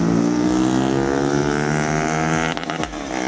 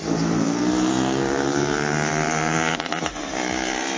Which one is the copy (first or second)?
second